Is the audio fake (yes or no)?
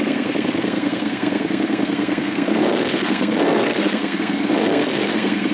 yes